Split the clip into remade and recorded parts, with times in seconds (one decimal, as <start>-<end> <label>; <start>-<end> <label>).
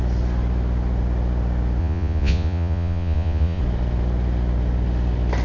0.0-1.8 recorded; 1.8-3.6 remade; 3.6-5.4 recorded